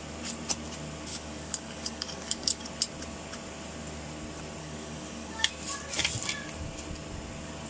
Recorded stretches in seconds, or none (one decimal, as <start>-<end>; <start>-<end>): 0.0-1.1; 2.7-4.6; 5.5-7.7